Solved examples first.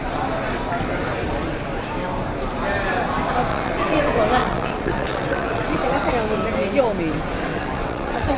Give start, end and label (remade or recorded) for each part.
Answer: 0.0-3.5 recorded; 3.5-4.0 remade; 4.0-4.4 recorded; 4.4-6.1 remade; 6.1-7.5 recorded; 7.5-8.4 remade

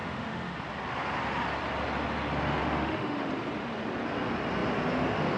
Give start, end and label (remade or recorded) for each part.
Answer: 0.0-0.5 remade; 0.5-2.6 recorded; 2.6-3.3 remade; 3.3-5.4 recorded

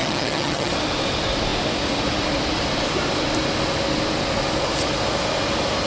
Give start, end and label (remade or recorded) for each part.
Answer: 0.0-0.7 remade; 0.7-5.9 recorded

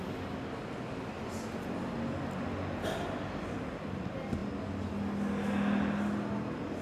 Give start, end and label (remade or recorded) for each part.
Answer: 0.0-6.8 recorded

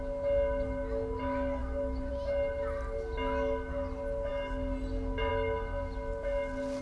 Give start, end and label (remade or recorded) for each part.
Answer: 0.0-1.6 recorded; 1.6-2.1 remade; 2.1-6.8 recorded